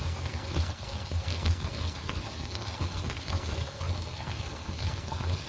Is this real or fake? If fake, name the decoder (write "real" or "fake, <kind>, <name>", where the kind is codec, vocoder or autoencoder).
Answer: fake, codec, SNAC